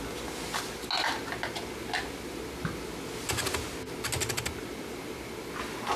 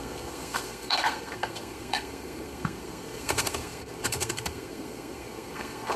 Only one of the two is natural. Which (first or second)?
first